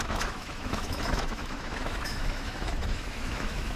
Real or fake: fake